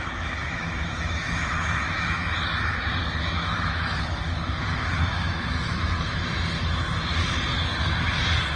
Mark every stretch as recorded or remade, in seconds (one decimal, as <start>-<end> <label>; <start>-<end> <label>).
0.0-2.3 remade; 2.3-3.2 recorded; 3.2-6.2 remade; 6.2-8.6 recorded